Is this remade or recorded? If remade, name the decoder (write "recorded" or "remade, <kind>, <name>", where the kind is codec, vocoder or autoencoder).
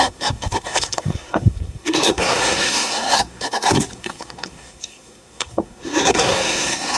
remade, codec, SNAC